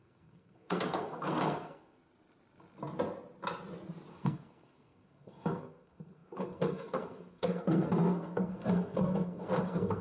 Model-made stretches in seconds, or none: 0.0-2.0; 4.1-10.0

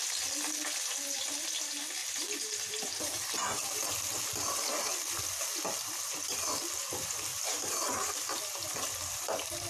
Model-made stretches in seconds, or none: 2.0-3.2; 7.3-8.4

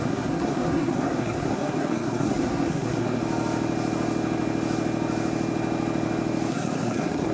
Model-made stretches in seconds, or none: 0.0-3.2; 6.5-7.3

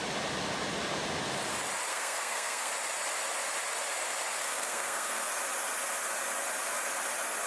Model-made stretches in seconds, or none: 1.9-2.7; 4.4-5.3

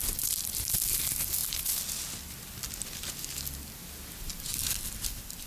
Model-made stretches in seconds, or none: 0.0-1.4; 4.6-5.5

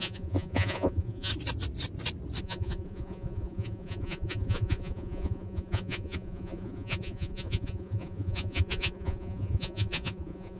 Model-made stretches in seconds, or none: 0.0-1.3; 2.4-10.6

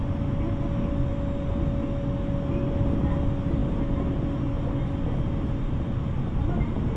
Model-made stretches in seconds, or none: none